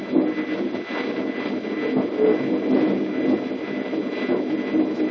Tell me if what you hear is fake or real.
real